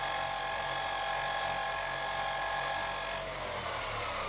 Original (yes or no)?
yes